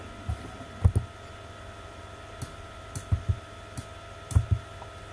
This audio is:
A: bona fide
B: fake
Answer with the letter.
A